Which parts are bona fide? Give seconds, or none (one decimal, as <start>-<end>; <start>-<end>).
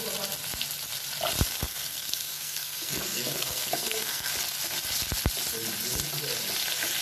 0.0-1.7; 4.3-7.0